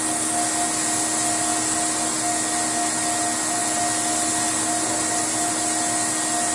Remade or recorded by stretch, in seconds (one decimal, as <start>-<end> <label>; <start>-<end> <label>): 0.0-6.5 recorded